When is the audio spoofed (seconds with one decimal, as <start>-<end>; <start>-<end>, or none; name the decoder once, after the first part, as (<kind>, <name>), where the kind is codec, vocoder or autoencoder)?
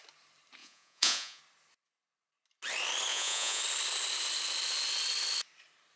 0.6-1.4 (vocoder, Vocos); 3.1-3.6